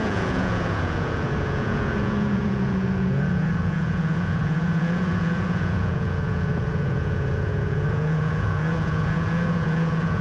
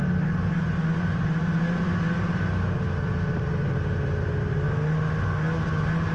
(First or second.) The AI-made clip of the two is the first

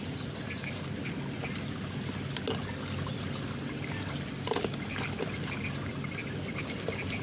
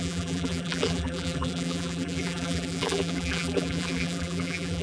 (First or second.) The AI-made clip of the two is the second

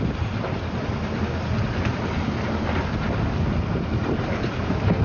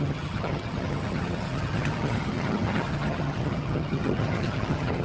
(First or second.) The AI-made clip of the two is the second